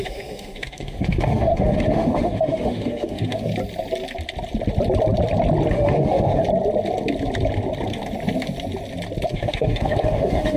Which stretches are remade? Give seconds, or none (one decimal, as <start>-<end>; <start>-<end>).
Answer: 0.0-3.5; 5.7-6.4; 9.3-10.6